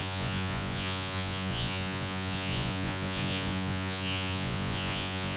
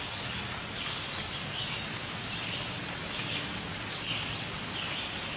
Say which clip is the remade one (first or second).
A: first